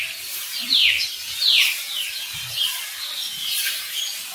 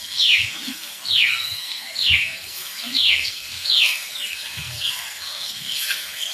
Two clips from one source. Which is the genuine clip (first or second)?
first